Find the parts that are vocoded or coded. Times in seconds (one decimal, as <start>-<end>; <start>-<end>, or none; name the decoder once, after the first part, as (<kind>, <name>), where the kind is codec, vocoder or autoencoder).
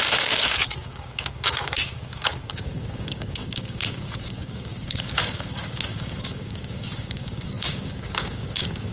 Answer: 0.0-8.9 (codec, DAC)